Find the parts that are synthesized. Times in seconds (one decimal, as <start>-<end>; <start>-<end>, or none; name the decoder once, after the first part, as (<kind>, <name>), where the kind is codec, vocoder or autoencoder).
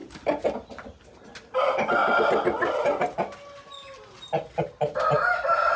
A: none